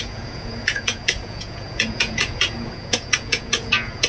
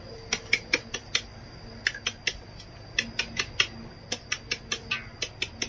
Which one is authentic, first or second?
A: second